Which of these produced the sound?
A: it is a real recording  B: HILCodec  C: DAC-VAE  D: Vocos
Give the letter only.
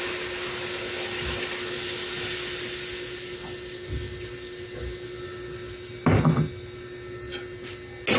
A